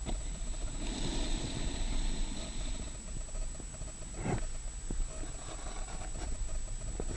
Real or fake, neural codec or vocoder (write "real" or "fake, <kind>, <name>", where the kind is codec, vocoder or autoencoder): real